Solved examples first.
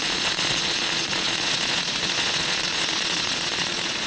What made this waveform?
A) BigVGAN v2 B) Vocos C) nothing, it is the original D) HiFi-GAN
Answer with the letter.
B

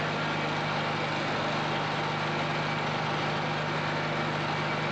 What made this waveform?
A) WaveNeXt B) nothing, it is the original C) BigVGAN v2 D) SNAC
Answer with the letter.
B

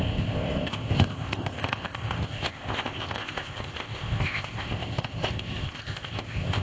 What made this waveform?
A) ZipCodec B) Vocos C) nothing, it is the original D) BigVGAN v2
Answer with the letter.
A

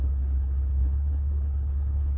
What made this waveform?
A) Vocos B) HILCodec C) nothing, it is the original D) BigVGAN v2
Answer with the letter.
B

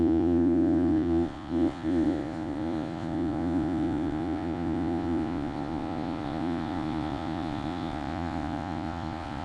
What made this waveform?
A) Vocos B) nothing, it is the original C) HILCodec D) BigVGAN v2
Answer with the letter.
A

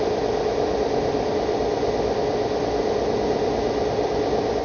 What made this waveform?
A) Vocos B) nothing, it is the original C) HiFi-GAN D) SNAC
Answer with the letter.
B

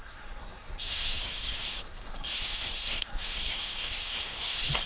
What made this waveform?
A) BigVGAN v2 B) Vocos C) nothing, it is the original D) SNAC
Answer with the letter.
D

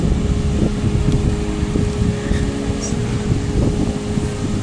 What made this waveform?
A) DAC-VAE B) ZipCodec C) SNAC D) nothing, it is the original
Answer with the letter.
D